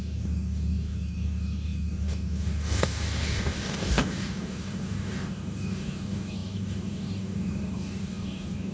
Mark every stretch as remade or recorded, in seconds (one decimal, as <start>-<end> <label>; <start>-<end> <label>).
0.0-8.7 remade